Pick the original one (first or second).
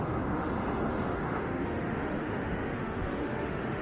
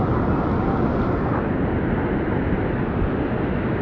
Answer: second